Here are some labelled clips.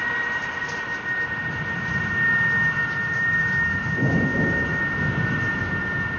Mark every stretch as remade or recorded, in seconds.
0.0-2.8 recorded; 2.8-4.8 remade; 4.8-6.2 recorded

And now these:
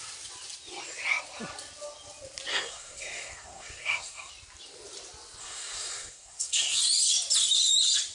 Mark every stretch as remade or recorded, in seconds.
0.0-2.5 recorded; 2.5-4.3 remade; 4.3-5.4 recorded; 5.4-6.8 remade; 6.8-8.1 recorded

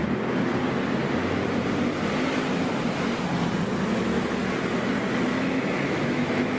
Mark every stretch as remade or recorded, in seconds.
0.0-4.0 recorded; 4.0-4.4 remade; 4.4-5.3 recorded; 5.3-6.6 remade

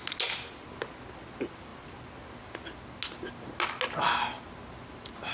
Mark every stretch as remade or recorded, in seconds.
0.0-5.3 recorded

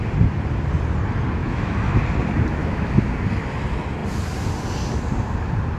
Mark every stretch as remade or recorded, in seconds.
0.0-1.4 recorded; 1.4-2.0 remade; 2.0-2.6 recorded; 2.6-3.1 remade; 3.1-5.8 recorded

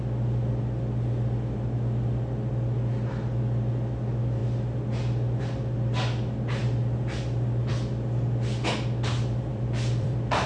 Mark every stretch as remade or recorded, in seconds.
0.0-9.5 recorded; 9.5-10.5 remade

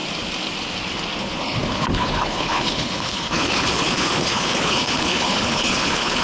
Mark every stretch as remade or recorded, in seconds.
0.0-1.2 recorded; 1.2-6.2 remade